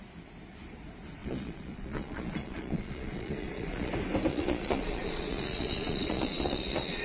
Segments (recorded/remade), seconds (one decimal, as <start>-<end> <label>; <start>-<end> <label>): 0.0-1.2 recorded; 1.2-3.9 remade; 3.9-4.3 recorded; 4.3-7.0 remade